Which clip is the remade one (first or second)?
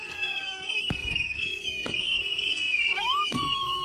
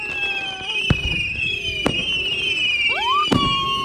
first